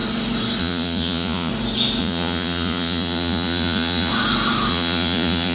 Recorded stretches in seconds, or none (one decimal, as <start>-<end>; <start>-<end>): 0.0-0.6; 1.5-2.0; 4.1-4.7